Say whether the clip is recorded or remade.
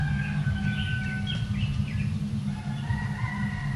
recorded